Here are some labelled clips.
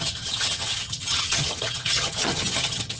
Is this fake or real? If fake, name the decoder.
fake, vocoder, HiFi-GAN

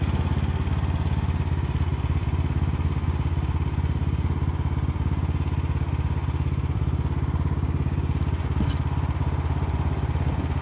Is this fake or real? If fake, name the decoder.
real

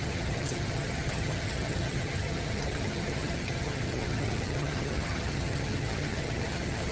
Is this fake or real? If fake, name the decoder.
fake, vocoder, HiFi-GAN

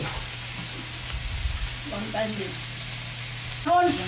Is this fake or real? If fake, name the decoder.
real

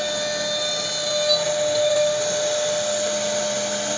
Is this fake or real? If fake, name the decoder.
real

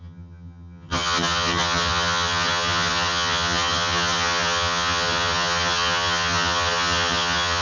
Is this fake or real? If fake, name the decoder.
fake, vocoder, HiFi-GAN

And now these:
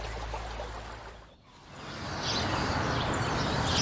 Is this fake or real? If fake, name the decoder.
real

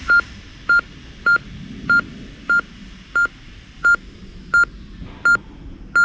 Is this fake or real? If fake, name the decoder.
real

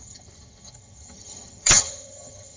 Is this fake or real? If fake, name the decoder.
fake, vocoder, HiFi-GAN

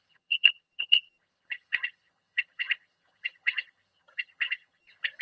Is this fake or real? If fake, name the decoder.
fake, vocoder, HiFi-GAN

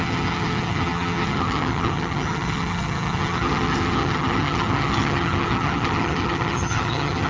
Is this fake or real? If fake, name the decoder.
fake, vocoder, HiFi-GAN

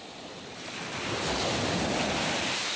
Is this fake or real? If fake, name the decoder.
real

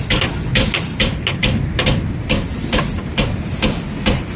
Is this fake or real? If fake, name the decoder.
real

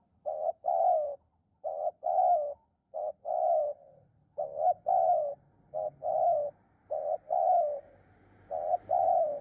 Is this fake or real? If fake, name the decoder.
real